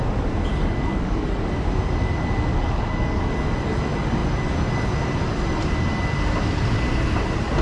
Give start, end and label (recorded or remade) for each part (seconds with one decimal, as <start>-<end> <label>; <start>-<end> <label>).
0.0-0.5 recorded; 0.5-1.5 remade; 1.5-2.5 recorded; 2.5-3.3 remade; 3.3-7.6 recorded